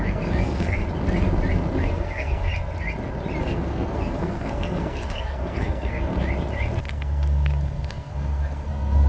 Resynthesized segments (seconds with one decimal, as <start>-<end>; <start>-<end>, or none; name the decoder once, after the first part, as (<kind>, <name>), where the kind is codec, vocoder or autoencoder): 0.0-0.8 (codec, SNAC); 1.8-2.5; 3.4-6.1; 6.8-9.1